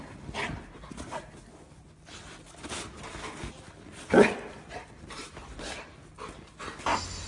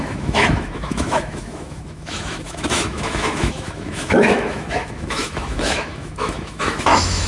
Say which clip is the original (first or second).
first